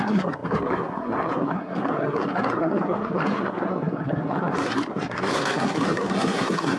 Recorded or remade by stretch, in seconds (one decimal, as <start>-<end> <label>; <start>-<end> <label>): 0.0-6.8 remade